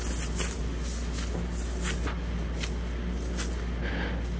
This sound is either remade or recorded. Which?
recorded